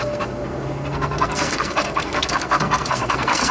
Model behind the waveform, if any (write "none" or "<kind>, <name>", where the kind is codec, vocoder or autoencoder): codec, SNAC